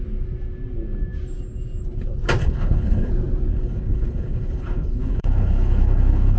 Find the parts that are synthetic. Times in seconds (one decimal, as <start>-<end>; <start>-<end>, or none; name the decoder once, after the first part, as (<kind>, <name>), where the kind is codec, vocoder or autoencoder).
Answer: 2.4-3.1 (codec, HILCodec); 3.5-6.4